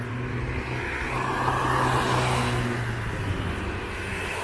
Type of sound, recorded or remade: recorded